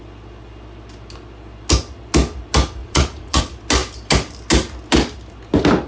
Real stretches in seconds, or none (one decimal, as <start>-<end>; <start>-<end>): 0.0-2.8; 3.4-5.9